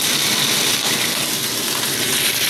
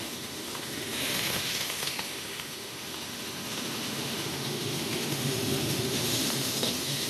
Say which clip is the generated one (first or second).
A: second